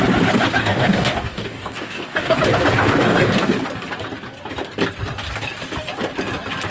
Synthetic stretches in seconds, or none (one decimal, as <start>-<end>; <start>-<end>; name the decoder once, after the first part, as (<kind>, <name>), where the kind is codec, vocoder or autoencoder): 0.6-2.4 (codec, DAC); 2.8-3.5